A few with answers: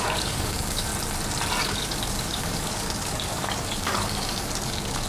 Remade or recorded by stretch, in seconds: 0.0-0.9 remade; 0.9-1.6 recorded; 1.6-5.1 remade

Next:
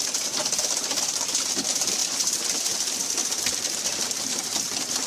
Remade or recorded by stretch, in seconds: 0.0-2.0 remade; 2.0-2.7 recorded; 2.7-5.1 remade

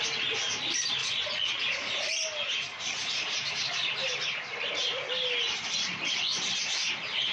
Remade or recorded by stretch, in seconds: 0.0-1.0 recorded; 1.0-1.6 remade; 1.6-2.7 recorded; 2.7-3.2 remade; 3.2-7.3 recorded

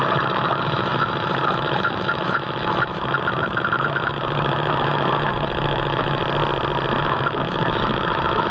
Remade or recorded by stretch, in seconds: 0.0-6.2 remade; 6.2-7.0 recorded; 7.0-8.5 remade

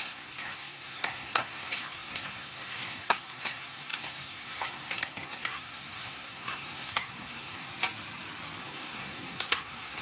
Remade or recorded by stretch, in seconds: 0.0-7.7 remade; 7.7-8.6 recorded; 8.6-10.0 remade

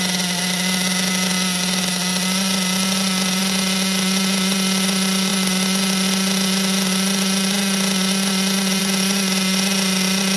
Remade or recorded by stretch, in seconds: 0.0-10.4 recorded

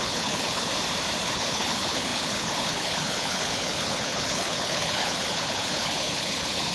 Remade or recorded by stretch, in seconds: 0.0-0.7 remade; 0.7-1.2 recorded; 1.2-6.7 remade